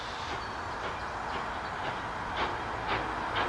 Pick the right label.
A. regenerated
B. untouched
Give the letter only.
B